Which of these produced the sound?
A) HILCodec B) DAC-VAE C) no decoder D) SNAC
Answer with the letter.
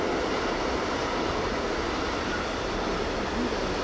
C